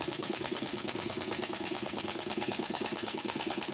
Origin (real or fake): fake